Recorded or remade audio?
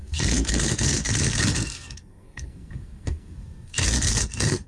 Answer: remade